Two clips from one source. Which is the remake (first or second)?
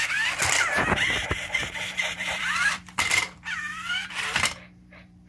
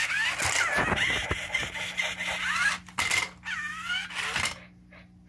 first